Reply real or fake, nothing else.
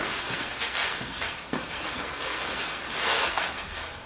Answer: fake